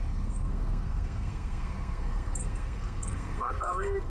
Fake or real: fake